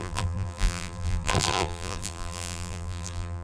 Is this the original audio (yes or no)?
no